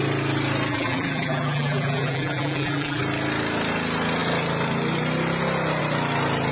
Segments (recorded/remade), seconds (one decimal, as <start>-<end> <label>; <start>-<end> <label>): 0.0-0.7 recorded; 0.7-3.0 remade; 3.0-6.5 recorded

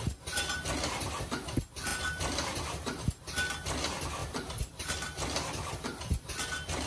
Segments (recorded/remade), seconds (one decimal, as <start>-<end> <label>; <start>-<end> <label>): 0.0-1.9 recorded; 1.9-3.0 remade; 3.0-4.2 recorded; 4.2-6.9 remade

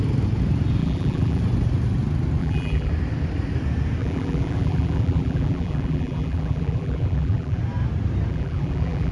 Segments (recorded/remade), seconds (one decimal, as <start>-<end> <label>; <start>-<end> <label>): 0.0-0.8 recorded; 0.8-1.4 remade; 1.4-2.4 recorded; 2.4-2.9 remade; 2.9-4.0 recorded; 4.0-7.6 remade; 7.6-8.3 recorded; 8.3-9.1 remade

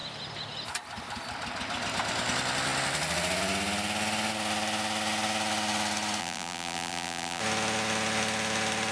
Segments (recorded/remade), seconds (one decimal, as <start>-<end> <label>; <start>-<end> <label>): 0.0-6.2 recorded; 6.2-7.4 remade; 7.4-8.9 recorded